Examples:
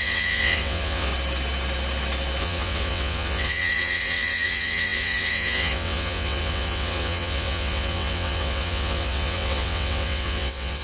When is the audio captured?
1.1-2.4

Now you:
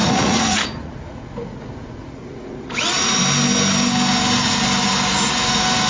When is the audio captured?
3.2-5.9

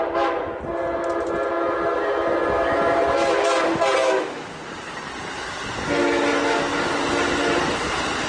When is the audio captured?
0.0-4.0; 4.5-8.3

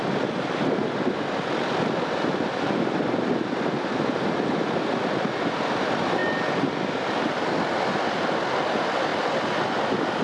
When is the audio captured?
0.0-10.2

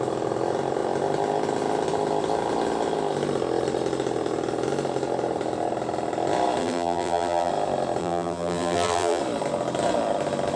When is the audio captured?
0.0-6.6; 7.5-8.0; 9.2-10.6